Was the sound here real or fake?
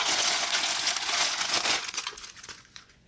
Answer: fake